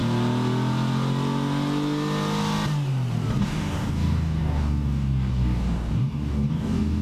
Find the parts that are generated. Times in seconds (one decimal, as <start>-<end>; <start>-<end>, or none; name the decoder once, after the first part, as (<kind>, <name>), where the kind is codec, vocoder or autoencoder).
3.4-7.0 (codec, DAC)